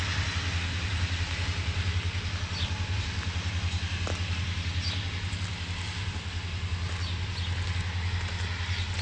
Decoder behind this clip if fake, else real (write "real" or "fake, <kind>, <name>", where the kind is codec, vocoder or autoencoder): real